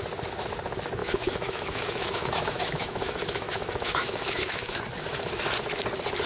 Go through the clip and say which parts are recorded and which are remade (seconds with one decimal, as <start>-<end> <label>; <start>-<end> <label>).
0.0-1.0 recorded; 1.0-4.8 remade; 4.8-6.3 recorded